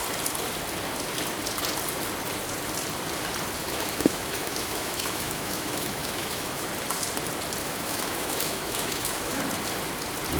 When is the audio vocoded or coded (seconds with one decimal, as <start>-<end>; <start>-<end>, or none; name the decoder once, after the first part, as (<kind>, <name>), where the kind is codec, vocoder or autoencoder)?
3.6-6.7 (autoencoder, DAC-VAE); 7.6-9.4